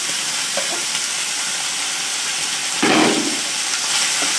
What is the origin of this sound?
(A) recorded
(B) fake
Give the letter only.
A